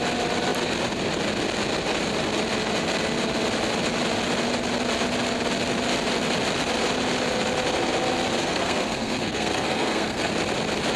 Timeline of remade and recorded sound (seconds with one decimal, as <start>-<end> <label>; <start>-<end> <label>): 0.0-8.4 recorded; 8.4-10.3 remade; 10.3-11.0 recorded